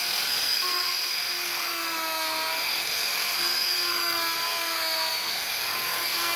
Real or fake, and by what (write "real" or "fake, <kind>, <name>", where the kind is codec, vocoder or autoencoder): fake, codec, SNAC